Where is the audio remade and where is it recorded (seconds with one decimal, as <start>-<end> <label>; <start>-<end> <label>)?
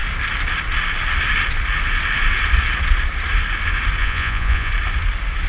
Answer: 0.0-4.0 recorded; 4.0-4.7 remade; 4.7-5.5 recorded